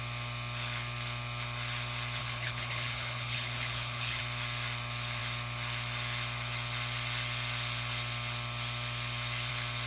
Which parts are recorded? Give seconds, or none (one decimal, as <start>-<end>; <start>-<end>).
0.0-2.2; 4.2-9.9